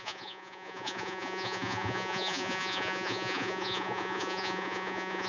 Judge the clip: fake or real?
fake